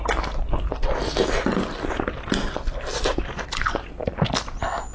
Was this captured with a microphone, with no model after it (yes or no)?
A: yes